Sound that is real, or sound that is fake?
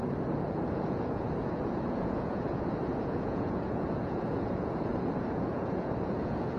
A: fake